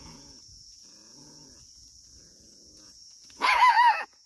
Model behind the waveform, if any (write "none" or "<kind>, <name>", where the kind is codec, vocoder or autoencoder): vocoder, Vocos